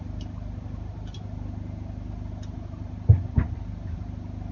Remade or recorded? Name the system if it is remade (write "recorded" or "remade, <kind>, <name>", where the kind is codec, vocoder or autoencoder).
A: recorded